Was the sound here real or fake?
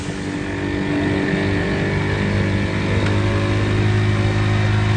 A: real